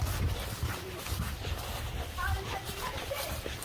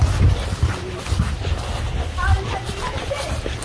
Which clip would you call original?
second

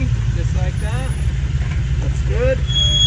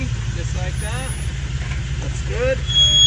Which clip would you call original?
second